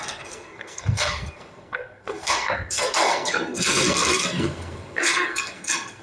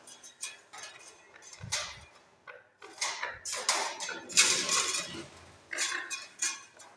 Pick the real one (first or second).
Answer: second